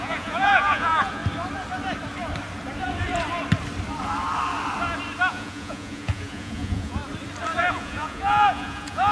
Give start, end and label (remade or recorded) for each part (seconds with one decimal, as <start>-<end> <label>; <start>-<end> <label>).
0.0-1.2 remade; 1.2-5.3 recorded; 5.3-7.0 remade; 7.0-7.7 recorded; 7.7-9.1 remade